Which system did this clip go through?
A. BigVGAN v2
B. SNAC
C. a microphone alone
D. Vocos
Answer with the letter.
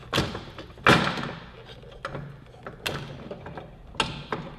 C